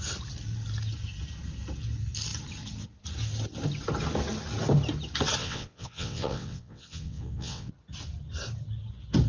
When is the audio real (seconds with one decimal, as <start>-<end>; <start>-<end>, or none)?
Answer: 0.0-5.4; 7.7-9.3